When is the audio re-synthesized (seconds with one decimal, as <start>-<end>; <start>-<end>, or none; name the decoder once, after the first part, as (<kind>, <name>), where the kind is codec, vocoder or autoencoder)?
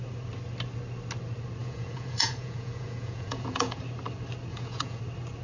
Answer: 1.6-3.8 (vocoder, Vocos); 4.5-5.0